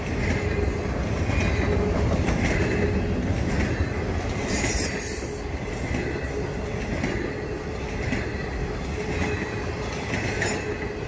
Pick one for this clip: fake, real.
real